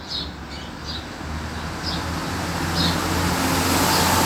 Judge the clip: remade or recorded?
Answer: recorded